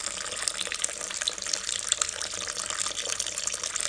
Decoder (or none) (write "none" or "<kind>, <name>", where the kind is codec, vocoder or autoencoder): none